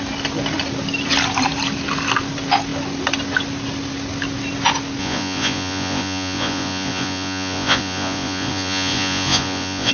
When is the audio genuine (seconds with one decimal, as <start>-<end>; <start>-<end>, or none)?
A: 0.0-5.0

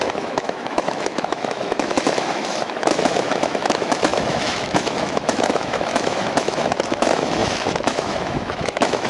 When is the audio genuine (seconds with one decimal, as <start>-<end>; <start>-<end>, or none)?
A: none